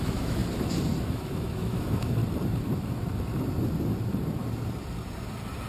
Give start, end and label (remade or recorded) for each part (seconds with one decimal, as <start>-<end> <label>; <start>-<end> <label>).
0.0-0.4 remade; 0.4-1.1 recorded; 1.1-2.2 remade; 2.2-5.7 recorded